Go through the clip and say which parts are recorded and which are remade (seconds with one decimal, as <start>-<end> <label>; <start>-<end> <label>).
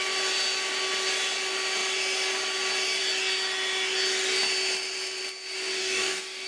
0.0-5.8 recorded; 5.8-6.5 remade